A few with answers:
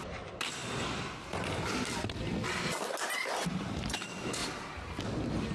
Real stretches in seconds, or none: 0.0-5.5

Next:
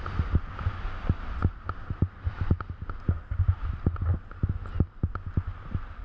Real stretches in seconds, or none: 0.0-6.0